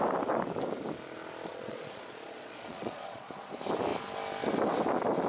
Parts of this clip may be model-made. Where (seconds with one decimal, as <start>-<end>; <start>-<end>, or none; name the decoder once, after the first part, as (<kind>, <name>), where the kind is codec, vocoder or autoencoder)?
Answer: 1.5-3.3 (vocoder, Vocos)